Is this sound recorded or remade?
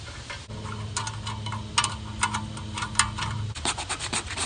recorded